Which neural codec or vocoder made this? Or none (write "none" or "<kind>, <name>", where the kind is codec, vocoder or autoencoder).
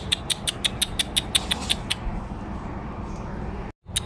none